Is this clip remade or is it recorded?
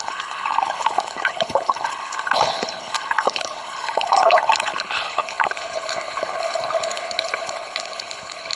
remade